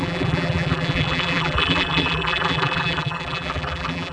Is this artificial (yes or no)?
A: yes